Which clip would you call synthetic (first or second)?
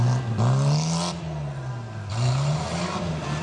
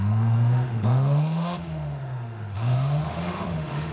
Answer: second